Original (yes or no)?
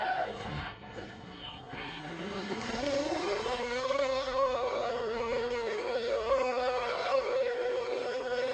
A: no